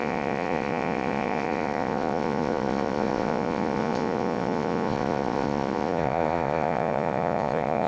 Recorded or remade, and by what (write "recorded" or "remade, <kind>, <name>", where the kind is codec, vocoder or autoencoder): remade, vocoder, Vocos